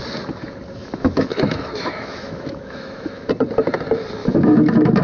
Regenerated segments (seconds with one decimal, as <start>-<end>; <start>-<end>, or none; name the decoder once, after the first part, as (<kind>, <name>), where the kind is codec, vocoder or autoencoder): 0.8-3.3 (autoencoder, DAC-VAE); 4.2-5.0